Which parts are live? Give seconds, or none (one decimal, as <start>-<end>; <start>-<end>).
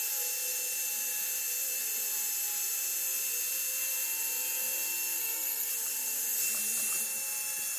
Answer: 0.0-5.2; 5.7-7.8